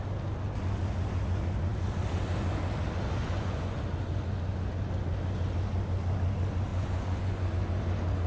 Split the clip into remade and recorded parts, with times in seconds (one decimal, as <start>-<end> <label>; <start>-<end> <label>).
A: 0.0-3.2 recorded; 3.2-3.8 remade; 3.8-6.7 recorded; 6.7-7.5 remade; 7.5-8.3 recorded